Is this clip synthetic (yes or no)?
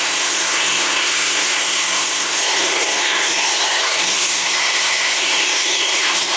yes